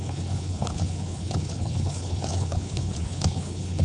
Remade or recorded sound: remade